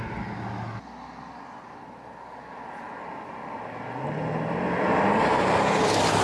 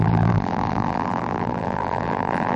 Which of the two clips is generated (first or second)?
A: second